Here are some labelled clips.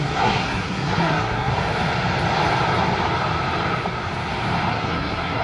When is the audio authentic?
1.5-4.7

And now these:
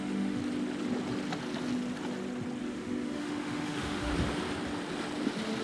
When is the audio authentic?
0.4-2.6; 4.1-5.6

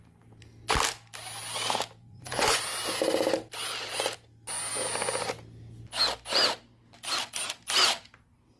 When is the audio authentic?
0.0-2.0; 2.6-8.6

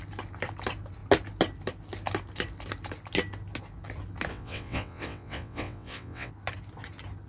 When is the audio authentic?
0.0-4.3; 6.3-7.3